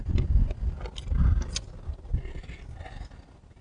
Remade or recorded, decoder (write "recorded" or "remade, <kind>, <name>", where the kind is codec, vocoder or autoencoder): recorded